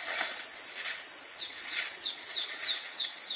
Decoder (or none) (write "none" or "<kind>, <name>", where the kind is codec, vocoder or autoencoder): vocoder, WaveNeXt